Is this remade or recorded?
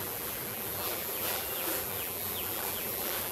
remade